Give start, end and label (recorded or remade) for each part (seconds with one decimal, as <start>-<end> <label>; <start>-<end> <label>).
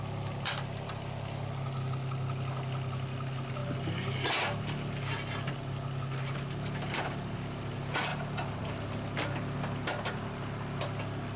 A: 0.0-11.4 recorded